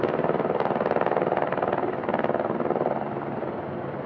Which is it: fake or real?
real